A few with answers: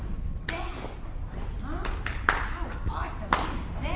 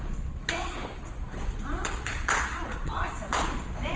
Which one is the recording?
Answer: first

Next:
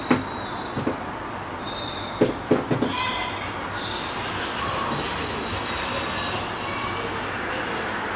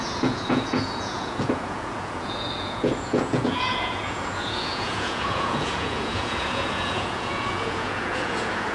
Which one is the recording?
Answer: first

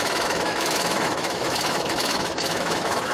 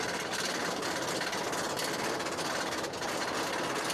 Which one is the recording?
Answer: second